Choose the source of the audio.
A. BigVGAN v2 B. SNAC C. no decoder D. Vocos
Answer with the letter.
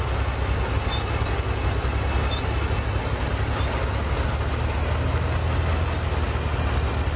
C